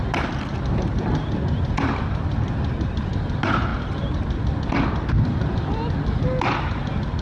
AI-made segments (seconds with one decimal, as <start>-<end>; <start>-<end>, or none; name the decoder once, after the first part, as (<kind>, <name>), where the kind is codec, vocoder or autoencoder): none